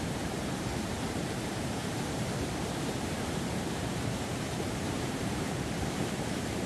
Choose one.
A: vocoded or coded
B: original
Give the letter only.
A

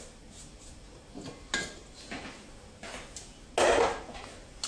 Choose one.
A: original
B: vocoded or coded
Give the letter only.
A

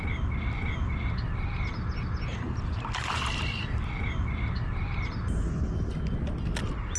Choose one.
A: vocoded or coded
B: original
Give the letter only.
B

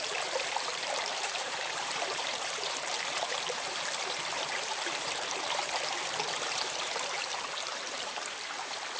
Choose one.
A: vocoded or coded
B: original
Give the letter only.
A